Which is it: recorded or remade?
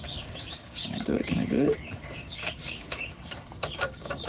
remade